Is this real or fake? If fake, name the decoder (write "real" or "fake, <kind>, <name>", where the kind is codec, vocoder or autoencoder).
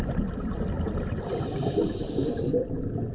fake, vocoder, BigVGAN v2